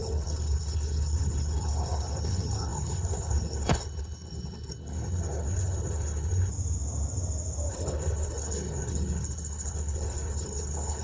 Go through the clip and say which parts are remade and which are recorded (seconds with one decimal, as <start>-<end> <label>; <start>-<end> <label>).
0.0-6.5 remade; 6.5-7.7 recorded; 7.7-11.0 remade